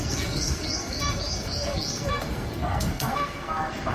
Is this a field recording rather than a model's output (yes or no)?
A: no